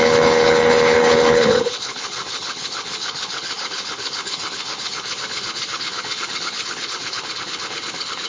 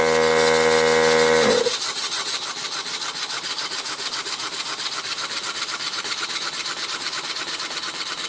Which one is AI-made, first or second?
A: first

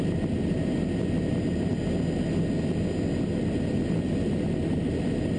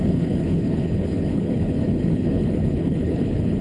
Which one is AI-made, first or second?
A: second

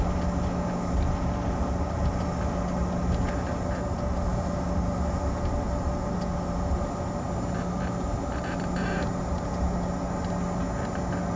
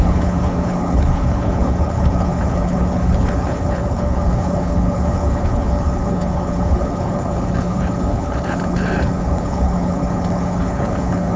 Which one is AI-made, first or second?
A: second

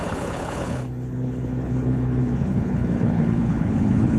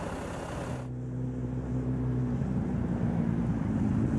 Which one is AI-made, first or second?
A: first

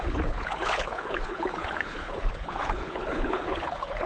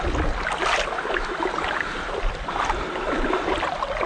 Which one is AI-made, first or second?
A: first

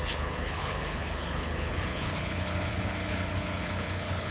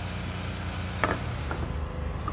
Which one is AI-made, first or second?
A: first